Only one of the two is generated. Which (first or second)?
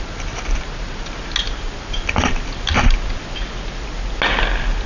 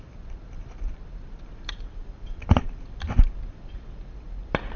second